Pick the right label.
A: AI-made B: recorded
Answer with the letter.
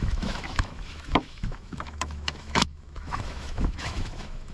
A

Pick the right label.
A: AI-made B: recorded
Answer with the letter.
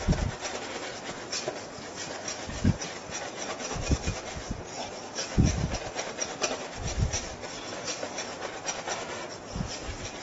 B